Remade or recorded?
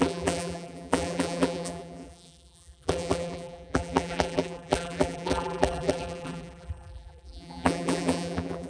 remade